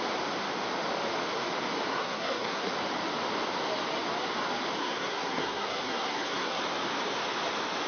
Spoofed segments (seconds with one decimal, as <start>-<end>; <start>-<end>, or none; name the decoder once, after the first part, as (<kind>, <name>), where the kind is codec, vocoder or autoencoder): 1.9-2.7 (codec, SNAC); 4.8-6.6